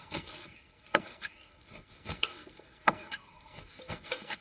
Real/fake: fake